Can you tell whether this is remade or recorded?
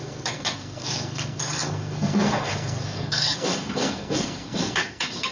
remade